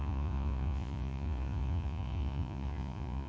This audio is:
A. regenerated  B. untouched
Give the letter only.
A